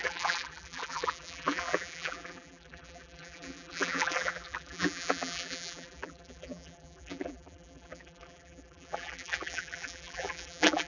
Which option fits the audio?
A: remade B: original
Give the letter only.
A